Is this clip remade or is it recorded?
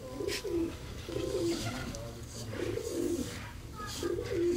remade